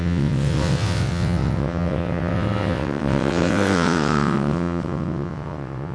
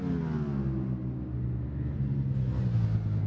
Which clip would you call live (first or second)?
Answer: second